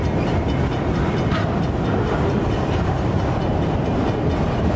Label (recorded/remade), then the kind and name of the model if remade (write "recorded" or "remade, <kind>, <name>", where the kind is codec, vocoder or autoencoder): recorded